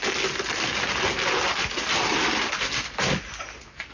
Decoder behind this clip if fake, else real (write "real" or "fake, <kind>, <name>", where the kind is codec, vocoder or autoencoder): real